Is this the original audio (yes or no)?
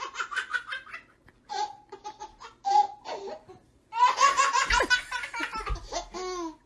yes